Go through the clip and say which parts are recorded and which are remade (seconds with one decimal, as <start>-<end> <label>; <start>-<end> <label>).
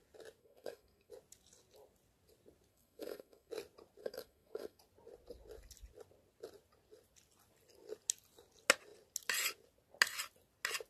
0.0-0.4 recorded; 0.4-1.1 remade; 1.1-2.7 recorded; 2.7-3.5 remade; 3.5-4.0 recorded; 4.0-4.8 remade; 4.8-10.9 recorded